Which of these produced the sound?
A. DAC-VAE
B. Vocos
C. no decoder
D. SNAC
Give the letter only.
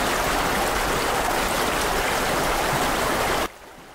C